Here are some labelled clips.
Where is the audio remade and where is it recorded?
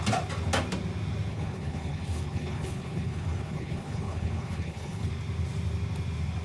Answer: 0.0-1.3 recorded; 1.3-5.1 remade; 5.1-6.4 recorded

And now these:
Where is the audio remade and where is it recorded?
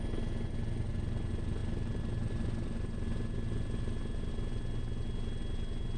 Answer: 0.0-6.0 recorded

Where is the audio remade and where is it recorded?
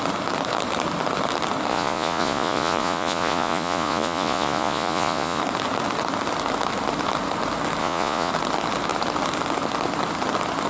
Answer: 0.0-1.7 recorded; 1.7-5.4 remade; 5.4-7.8 recorded; 7.8-8.3 remade; 8.3-10.7 recorded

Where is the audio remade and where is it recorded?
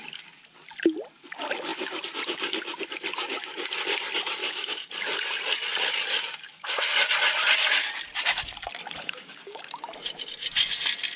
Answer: 0.0-4.4 recorded; 4.4-4.9 remade; 4.9-6.5 recorded; 6.5-7.1 remade; 7.1-9.0 recorded; 9.0-9.6 remade; 9.6-11.2 recorded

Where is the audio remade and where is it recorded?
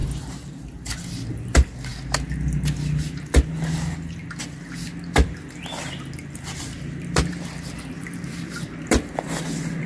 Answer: 0.0-1.9 remade; 1.9-6.6 recorded; 6.6-9.9 remade